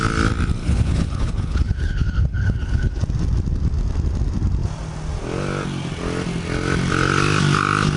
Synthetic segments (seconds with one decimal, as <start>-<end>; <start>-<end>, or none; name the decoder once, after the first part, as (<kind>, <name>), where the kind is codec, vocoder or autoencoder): 0.6-3.0 (codec, HILCodec)